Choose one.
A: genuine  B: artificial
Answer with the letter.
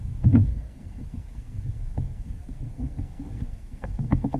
B